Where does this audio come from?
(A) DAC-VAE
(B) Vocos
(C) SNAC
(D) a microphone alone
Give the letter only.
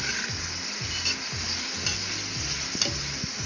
D